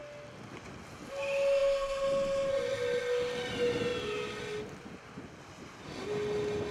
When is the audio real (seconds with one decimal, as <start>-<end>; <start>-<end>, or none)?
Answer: 0.0-6.7

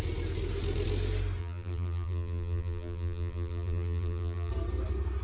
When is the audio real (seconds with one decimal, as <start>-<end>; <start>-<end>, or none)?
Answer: 0.0-1.4; 4.5-5.2

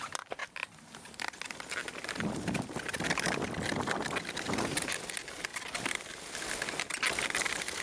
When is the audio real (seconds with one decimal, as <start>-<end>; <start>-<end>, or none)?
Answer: 0.0-5.5; 6.0-7.8

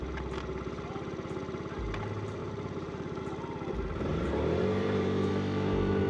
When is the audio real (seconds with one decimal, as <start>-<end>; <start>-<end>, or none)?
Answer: 0.0-2.4; 3.2-4.1; 5.3-6.1

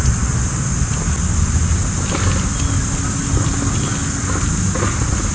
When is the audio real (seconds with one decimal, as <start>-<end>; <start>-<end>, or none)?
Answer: 0.0-5.3

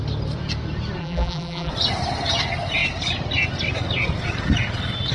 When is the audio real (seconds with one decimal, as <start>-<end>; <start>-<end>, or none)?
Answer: 0.0-1.0; 1.7-5.1

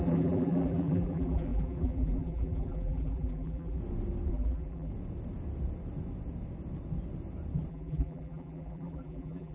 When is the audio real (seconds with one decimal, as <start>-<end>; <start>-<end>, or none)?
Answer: 3.8-4.3; 4.9-7.7